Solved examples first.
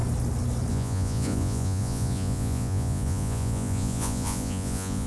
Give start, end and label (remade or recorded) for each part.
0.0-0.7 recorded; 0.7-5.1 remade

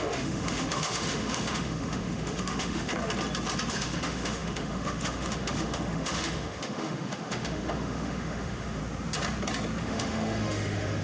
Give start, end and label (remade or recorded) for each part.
0.0-2.9 remade; 2.9-3.7 recorded; 3.7-8.8 remade; 8.8-9.8 recorded; 9.8-11.0 remade

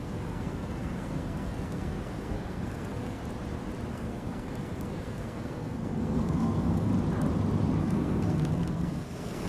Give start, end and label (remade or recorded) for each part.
0.0-3.2 remade; 3.2-3.9 recorded; 3.9-6.9 remade; 6.9-7.8 recorded; 7.8-9.5 remade